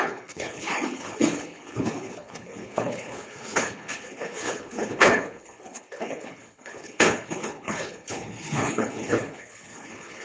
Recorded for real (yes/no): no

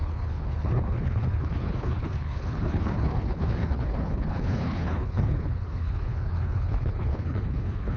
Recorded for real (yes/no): no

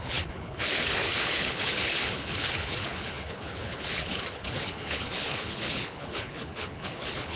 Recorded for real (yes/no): no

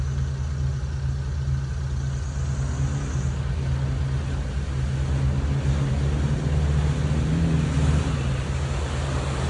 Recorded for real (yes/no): yes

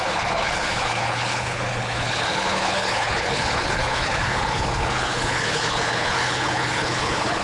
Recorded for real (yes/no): no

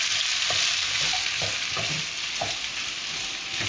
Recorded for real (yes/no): yes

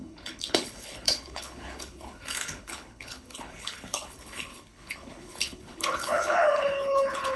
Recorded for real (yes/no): no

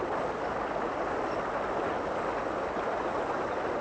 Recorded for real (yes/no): yes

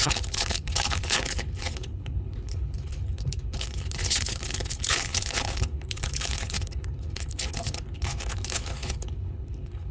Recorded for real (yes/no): no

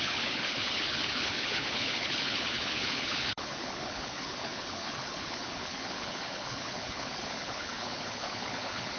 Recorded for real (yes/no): no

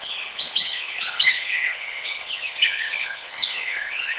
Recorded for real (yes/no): no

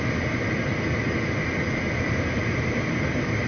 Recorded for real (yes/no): yes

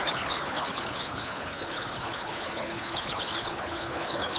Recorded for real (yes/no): no